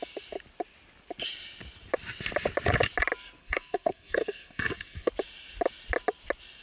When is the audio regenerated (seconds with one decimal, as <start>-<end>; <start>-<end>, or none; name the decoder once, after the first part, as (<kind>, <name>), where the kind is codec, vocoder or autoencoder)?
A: 3.4-5.1 (codec, SNAC)